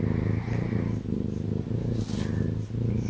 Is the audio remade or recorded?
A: recorded